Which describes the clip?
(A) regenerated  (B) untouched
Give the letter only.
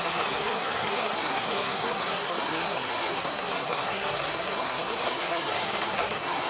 A